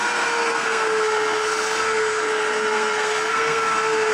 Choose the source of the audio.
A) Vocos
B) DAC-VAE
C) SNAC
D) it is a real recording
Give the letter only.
C